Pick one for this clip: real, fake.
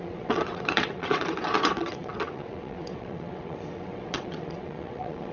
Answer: fake